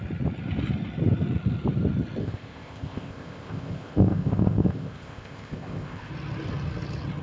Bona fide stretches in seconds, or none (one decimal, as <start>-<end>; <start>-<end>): 0.0-2.2; 6.1-7.2